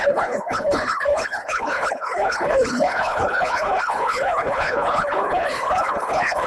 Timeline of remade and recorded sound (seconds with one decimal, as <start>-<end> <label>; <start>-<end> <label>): 0.0-6.5 remade